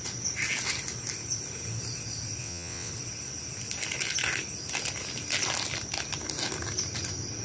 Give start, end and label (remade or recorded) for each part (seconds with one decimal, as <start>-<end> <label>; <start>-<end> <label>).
0.0-2.4 recorded; 2.4-2.9 remade; 2.9-7.4 recorded